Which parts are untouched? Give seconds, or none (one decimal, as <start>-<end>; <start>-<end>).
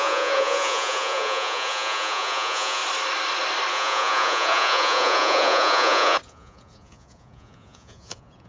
2.8-3.7